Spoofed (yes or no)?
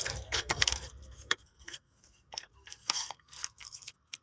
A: yes